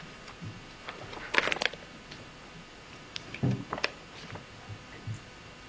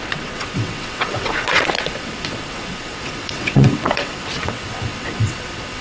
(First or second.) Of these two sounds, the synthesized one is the second